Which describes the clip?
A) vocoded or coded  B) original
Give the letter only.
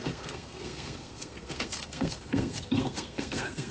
A